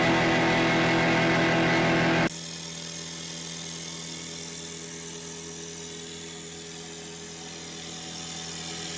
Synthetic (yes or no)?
no